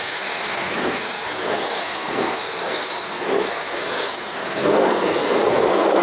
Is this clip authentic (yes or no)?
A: no